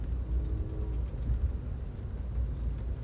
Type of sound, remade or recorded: recorded